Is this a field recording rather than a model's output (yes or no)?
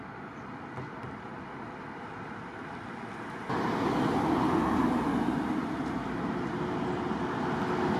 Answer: yes